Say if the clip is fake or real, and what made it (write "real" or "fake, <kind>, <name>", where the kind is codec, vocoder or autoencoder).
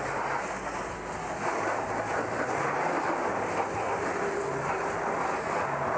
real